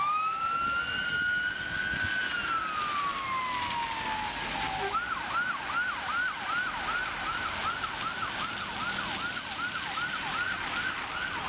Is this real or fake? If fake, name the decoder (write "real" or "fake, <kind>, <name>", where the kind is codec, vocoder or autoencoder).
real